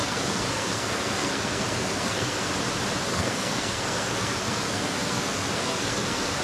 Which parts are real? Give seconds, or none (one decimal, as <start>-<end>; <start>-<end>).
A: 2.5-3.1